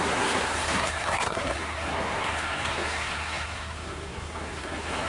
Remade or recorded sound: remade